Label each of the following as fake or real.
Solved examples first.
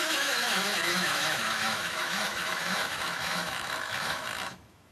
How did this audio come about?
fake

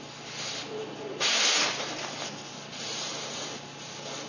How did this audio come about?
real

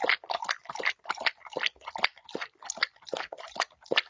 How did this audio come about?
real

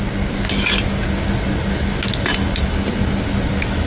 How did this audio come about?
real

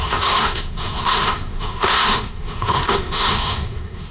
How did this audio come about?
fake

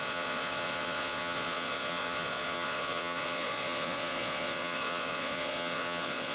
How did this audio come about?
fake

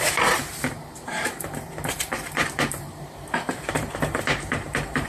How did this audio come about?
fake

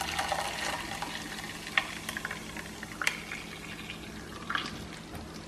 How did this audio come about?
real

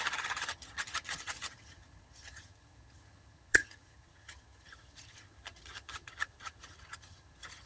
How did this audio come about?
fake